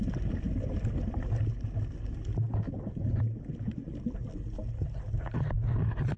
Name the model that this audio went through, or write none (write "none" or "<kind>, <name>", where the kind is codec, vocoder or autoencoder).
none